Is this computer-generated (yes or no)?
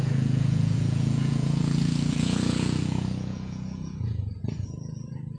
yes